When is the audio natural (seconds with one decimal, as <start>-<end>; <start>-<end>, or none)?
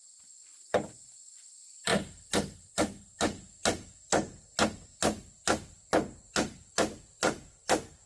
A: 0.0-0.5; 1.1-8.1